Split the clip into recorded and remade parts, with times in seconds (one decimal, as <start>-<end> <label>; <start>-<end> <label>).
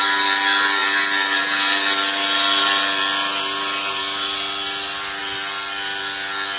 0.0-6.6 recorded